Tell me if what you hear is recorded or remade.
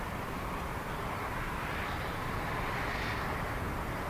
recorded